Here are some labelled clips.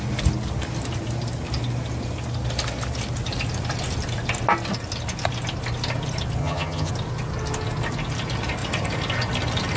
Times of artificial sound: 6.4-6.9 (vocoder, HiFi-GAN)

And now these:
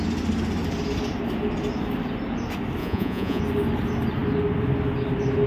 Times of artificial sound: 2.8-3.4 (vocoder, Vocos)